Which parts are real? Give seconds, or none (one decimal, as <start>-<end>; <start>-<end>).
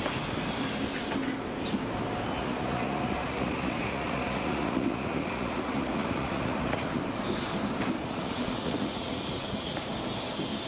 0.0-2.3; 7.0-8.0; 9.9-10.7